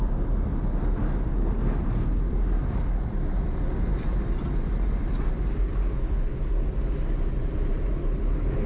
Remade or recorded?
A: recorded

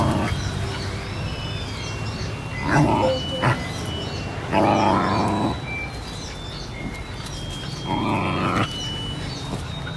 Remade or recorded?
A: recorded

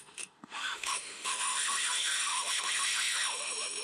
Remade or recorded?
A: remade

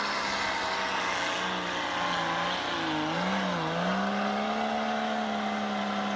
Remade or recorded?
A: recorded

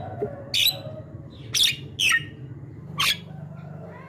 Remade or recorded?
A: recorded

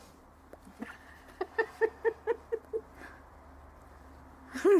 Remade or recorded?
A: remade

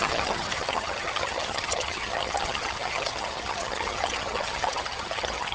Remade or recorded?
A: remade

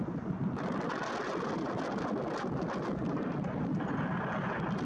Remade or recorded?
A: recorded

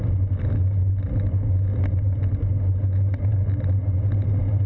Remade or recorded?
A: recorded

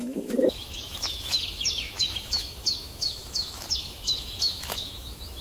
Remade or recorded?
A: remade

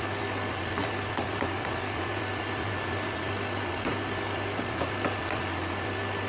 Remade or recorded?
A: recorded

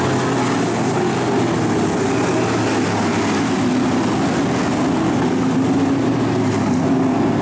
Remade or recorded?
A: recorded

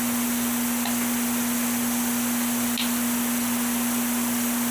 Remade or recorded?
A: recorded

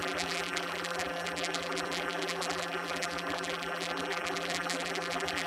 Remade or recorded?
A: remade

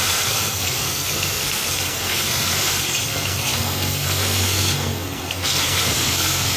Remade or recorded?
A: remade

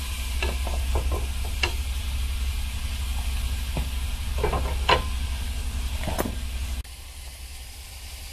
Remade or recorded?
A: recorded